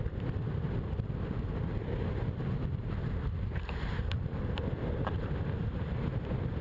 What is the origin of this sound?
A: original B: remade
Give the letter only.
A